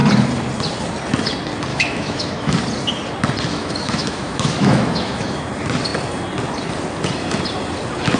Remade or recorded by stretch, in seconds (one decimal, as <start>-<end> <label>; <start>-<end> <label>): 0.0-1.7 recorded; 1.7-2.5 remade; 2.5-3.5 recorded; 3.5-5.5 remade; 5.5-8.2 recorded